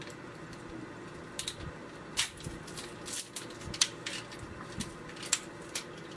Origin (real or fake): real